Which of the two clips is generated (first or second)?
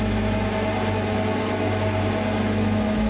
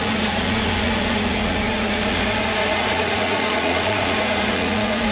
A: second